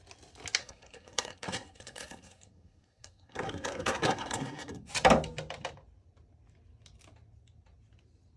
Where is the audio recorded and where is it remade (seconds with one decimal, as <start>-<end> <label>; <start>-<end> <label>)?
0.0-0.6 recorded; 0.6-4.9 remade; 4.9-8.4 recorded